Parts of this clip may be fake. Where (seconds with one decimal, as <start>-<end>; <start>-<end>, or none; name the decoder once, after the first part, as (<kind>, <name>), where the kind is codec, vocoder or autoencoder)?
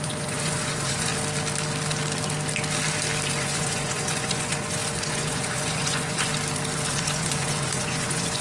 0.0-1.1 (vocoder, Vocos); 3.3-6.3; 6.9-8.4